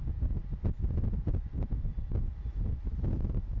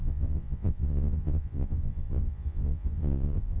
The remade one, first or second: second